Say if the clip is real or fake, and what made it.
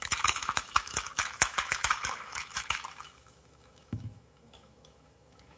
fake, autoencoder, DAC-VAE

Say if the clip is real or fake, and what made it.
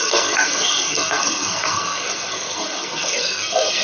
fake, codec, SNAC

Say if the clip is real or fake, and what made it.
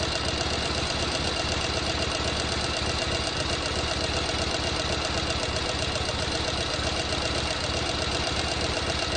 real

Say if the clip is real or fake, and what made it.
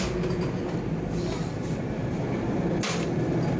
real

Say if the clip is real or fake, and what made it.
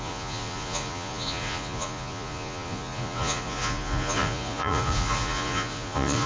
fake, vocoder, Vocos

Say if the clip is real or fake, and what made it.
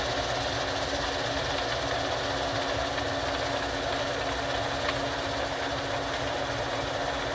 real